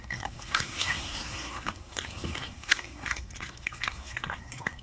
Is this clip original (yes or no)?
no